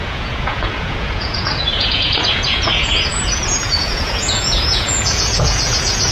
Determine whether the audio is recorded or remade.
remade